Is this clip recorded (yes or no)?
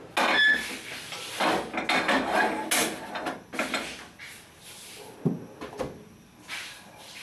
yes